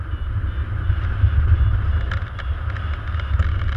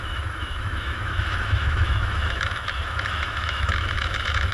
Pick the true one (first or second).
first